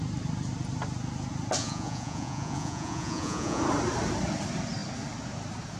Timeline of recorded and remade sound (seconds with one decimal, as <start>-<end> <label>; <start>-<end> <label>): 0.0-1.6 recorded; 1.6-3.6 remade; 3.6-5.8 recorded